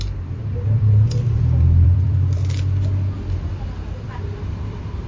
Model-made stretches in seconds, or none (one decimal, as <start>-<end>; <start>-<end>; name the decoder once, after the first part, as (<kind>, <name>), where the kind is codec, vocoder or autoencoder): 0.0-2.4 (vocoder, BigVGAN v2); 4.6-5.1